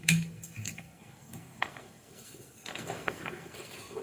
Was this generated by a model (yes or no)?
yes